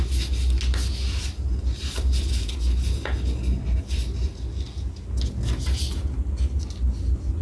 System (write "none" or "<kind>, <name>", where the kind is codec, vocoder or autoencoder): none